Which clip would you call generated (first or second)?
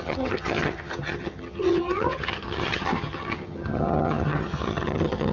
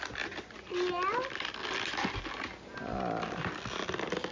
first